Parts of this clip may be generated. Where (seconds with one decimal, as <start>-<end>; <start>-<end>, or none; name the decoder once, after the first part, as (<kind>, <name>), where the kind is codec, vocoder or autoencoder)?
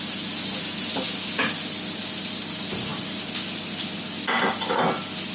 none